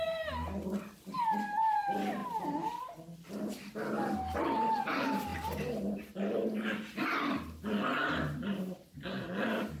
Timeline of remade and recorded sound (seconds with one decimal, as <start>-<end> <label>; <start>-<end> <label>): 0.0-9.8 recorded